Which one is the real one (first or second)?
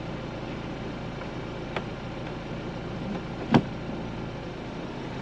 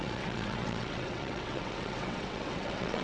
first